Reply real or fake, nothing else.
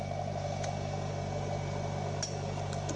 real